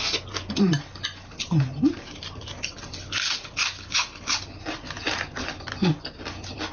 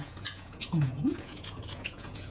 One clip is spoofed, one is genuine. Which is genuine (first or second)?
first